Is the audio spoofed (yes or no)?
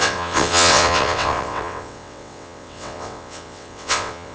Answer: yes